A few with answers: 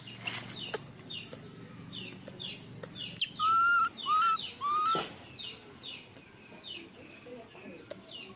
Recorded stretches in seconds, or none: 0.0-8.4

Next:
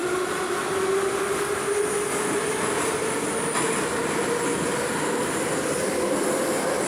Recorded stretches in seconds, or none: 0.0-6.9

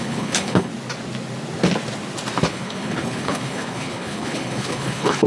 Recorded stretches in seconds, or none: 0.7-2.5

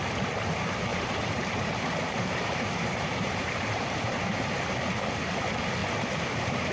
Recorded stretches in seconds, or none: 0.0-0.9; 4.2-5.8

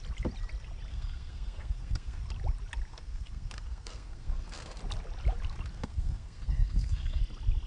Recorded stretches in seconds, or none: 0.0-0.9; 2.2-2.9; 4.8-5.7; 7.2-7.7

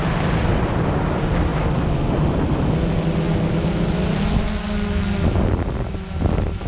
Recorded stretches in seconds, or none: 0.0-6.7

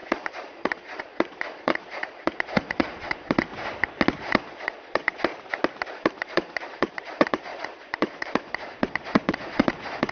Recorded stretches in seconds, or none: 3.5-4.2; 5.3-5.9